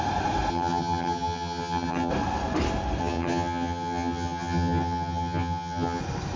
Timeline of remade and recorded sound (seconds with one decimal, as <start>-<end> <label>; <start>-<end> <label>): 0.0-0.5 recorded; 0.5-2.1 remade; 2.1-3.0 recorded; 3.0-6.0 remade; 6.0-6.4 recorded